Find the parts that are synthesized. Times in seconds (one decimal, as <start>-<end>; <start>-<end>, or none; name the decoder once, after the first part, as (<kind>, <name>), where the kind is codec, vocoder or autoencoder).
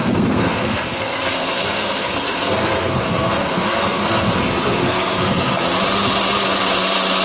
0.0-4.3 (codec, SNAC); 4.8-5.6